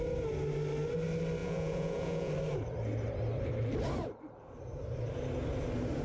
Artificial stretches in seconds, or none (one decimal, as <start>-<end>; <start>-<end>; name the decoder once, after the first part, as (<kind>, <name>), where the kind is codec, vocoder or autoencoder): 1.4-2.3 (vocoder, Vocos)